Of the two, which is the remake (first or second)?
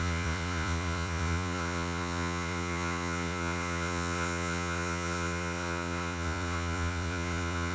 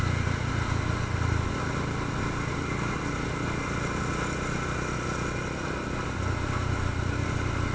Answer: first